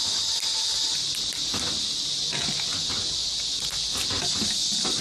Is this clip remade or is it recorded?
recorded